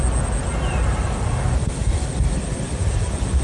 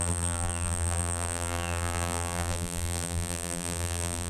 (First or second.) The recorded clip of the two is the first